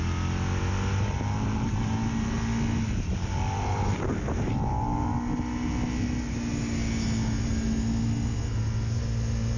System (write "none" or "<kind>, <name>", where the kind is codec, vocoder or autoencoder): none